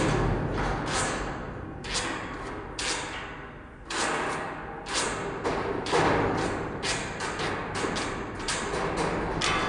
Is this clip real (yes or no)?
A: yes